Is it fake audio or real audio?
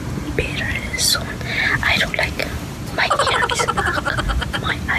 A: fake